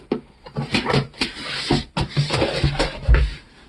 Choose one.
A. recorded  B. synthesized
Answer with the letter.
B